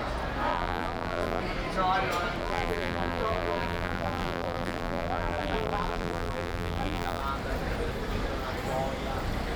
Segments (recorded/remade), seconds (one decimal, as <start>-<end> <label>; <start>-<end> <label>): 0.0-0.5 recorded; 0.5-1.4 remade; 1.4-2.4 recorded; 2.4-7.2 remade; 7.2-9.6 recorded